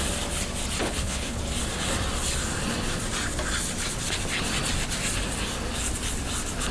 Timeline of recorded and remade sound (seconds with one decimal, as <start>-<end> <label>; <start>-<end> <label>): 0.0-0.8 recorded; 0.8-1.4 remade; 1.4-6.7 recorded